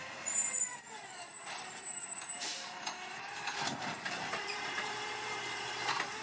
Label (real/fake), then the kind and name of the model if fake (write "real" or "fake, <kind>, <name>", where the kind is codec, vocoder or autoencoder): fake, vocoder, BigVGAN v2